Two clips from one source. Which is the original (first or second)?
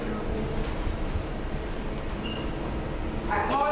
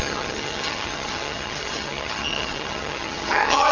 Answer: first